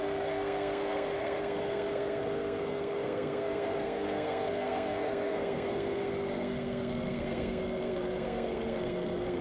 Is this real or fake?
fake